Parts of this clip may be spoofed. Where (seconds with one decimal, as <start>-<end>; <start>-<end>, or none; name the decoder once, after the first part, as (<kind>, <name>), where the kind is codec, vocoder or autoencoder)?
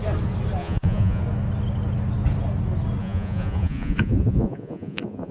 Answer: 0.6-1.2 (vocoder, Vocos); 3.0-5.3